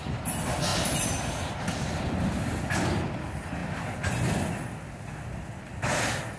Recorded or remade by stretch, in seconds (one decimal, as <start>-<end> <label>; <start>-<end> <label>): 0.0-6.4 recorded